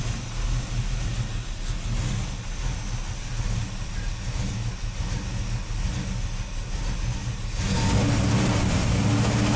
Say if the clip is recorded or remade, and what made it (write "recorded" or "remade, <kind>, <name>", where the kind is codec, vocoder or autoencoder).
recorded